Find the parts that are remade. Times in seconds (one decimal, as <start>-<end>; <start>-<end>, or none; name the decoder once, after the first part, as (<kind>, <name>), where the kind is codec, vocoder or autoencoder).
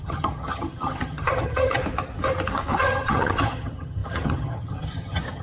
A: 0.0-1.8 (vocoder, HiFi-GAN); 2.8-5.4